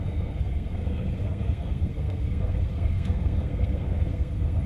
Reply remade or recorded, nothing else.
remade